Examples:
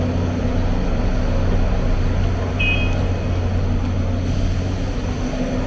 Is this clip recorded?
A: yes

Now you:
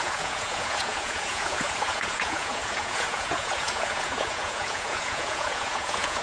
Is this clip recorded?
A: no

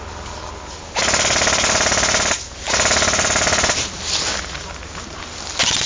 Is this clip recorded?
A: yes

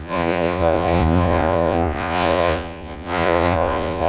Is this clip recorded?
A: no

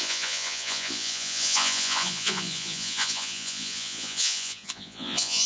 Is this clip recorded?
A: no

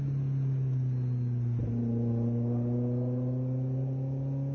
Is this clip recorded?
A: yes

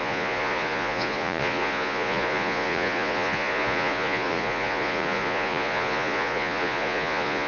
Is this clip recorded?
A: no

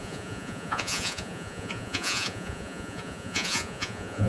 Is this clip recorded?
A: no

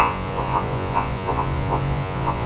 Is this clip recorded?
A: no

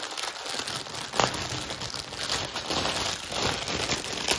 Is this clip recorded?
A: yes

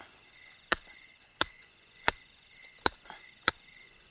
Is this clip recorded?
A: no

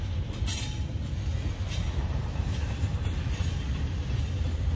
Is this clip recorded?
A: yes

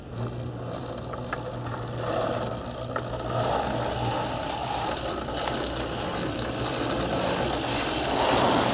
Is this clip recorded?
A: yes